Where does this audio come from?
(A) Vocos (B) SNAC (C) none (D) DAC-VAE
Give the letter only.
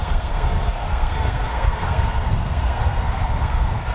B